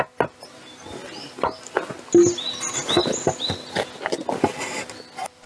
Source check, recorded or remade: recorded